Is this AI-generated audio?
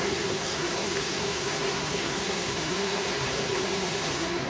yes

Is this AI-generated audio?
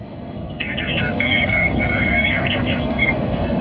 yes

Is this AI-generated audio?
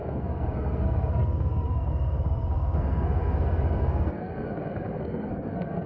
yes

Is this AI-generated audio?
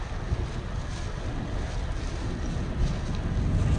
no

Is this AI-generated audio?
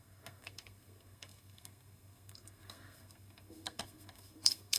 yes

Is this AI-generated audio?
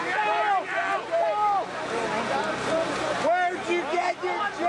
no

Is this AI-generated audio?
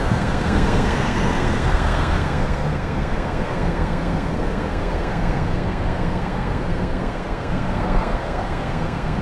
yes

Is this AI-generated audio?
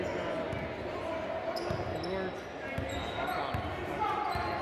no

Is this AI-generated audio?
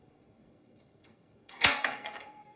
yes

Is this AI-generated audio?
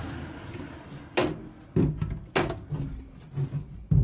no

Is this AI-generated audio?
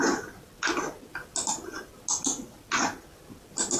no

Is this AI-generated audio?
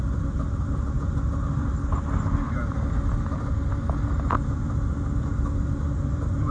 no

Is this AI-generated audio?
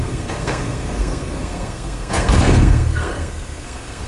yes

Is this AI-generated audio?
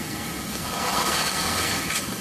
yes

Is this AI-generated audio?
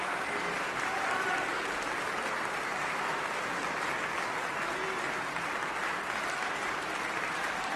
no